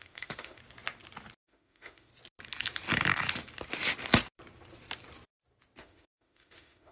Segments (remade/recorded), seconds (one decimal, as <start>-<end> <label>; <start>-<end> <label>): 0.0-0.6 remade; 0.6-1.4 recorded; 1.4-2.1 remade; 2.1-5.8 recorded; 5.8-6.9 remade